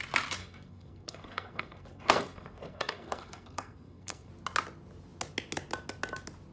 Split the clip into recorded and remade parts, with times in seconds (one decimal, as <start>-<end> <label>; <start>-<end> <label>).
0.0-0.4 recorded; 0.4-4.3 remade; 4.3-6.5 recorded